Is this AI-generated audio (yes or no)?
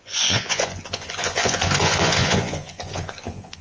yes